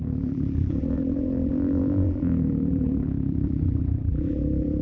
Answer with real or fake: fake